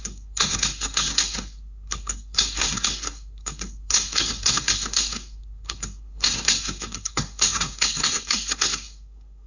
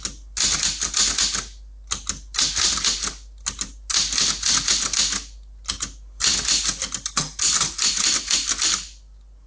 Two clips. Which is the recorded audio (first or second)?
second